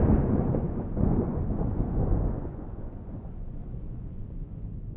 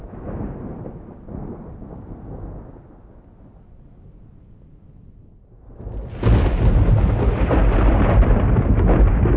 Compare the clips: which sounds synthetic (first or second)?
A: first